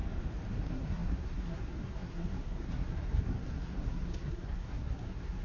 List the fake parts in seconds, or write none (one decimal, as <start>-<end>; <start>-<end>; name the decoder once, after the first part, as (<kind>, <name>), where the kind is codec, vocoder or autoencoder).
0.5-5.4 (codec, SNAC)